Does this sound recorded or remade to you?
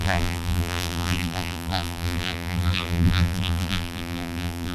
remade